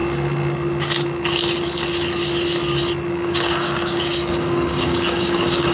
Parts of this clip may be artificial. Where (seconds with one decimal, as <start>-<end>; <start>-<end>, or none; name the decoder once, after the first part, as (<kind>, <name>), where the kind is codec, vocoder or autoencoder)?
3.1-5.7 (codec, DAC)